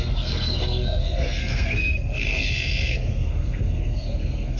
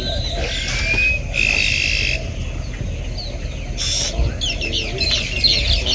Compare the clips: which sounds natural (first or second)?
second